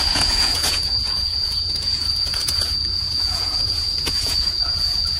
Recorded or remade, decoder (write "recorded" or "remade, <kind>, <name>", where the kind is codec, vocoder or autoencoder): remade, vocoder, Vocos